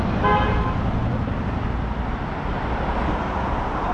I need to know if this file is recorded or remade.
recorded